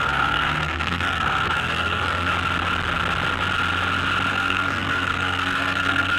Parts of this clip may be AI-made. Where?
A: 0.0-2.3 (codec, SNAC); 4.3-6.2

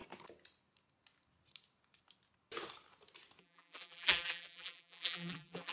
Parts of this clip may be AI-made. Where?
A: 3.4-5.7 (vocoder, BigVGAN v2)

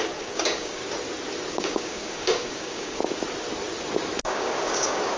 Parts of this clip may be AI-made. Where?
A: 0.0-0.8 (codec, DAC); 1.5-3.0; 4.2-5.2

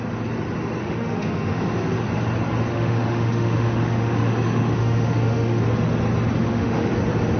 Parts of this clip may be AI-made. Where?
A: 0.8-1.8 (autoencoder, DAC-VAE); 2.7-5.6; 6.4-6.9

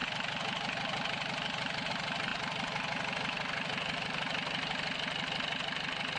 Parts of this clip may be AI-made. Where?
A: none